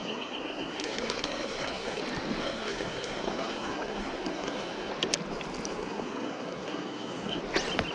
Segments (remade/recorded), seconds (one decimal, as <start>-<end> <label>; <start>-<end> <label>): 0.0-2.0 remade; 2.0-2.4 recorded; 2.4-4.9 remade; 4.9-5.7 recorded; 5.7-7.4 remade; 7.4-7.9 recorded